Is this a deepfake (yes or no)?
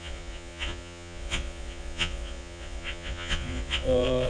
yes